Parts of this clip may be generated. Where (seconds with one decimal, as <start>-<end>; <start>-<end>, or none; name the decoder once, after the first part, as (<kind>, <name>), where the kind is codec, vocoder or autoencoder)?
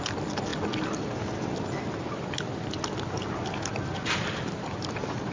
none